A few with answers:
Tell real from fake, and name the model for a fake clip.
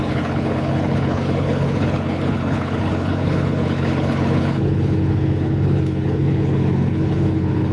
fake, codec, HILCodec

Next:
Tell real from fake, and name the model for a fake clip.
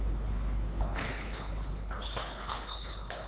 fake, codec, HILCodec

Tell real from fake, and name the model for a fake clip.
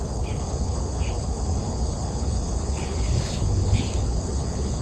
fake, codec, HILCodec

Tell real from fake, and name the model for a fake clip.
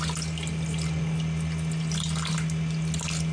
real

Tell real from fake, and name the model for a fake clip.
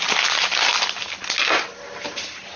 real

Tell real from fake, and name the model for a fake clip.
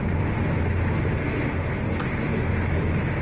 real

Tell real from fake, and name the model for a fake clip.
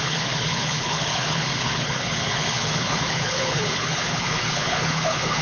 fake, codec, HILCodec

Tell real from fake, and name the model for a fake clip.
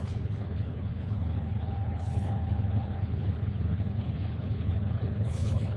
fake, codec, HILCodec